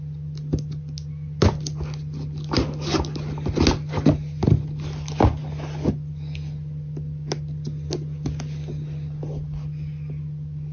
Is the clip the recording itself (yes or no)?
yes